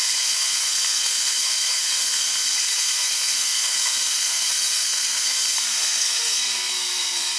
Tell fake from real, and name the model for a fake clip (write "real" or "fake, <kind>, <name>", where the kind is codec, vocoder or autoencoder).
fake, codec, SNAC